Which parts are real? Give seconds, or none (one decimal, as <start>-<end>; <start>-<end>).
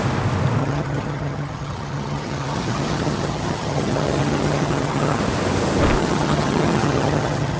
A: 0.0-0.6; 5.2-6.0